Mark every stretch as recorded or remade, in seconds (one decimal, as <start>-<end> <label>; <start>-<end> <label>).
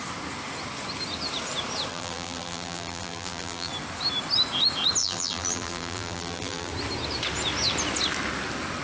0.0-1.9 recorded; 1.9-3.7 remade; 3.7-5.0 recorded; 5.0-6.7 remade; 6.7-8.8 recorded